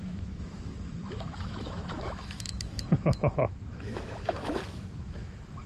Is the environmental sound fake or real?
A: fake